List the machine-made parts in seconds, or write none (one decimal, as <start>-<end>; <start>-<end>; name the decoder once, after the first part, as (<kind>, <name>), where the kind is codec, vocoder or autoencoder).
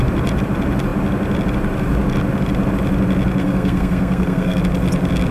3.4-4.6 (codec, SNAC)